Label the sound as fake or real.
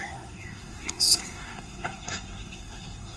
fake